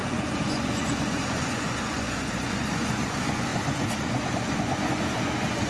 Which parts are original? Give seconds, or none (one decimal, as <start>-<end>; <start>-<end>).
none